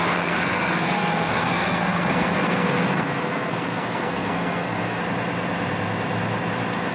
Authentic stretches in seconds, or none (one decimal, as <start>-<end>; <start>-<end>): 5.0-6.9